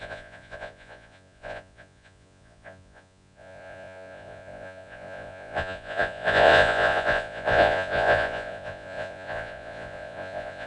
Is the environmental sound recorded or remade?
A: remade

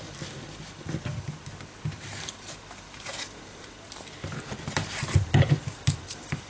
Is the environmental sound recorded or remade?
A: recorded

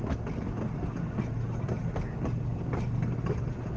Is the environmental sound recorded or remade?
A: recorded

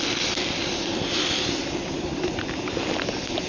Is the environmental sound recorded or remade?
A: recorded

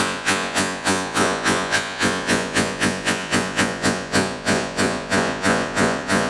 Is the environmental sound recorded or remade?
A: remade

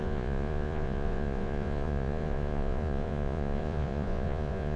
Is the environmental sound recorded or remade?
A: remade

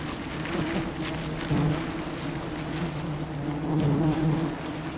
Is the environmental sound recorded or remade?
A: recorded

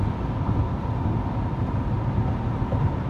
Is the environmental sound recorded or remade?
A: recorded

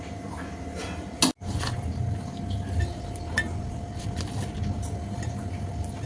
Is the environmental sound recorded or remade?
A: recorded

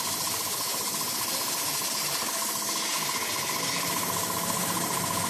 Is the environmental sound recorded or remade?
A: recorded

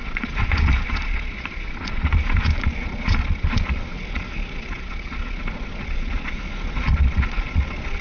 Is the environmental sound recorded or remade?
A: remade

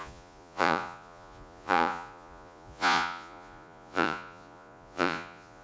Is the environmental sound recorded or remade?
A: remade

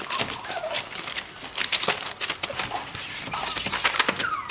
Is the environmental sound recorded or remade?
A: recorded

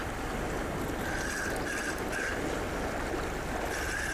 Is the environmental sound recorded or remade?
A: recorded